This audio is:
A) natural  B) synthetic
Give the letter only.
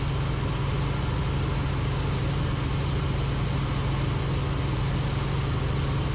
A